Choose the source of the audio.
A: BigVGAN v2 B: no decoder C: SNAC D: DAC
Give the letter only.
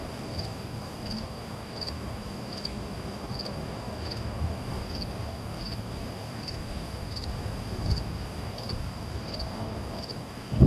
D